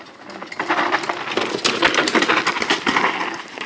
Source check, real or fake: real